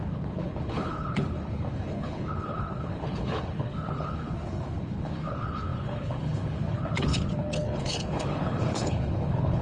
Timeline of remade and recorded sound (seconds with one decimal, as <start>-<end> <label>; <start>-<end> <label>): 0.0-9.6 remade

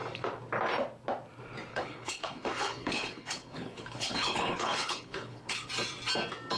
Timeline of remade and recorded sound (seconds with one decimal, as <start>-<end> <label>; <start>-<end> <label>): 0.0-1.7 recorded; 1.7-5.7 remade; 5.7-6.6 recorded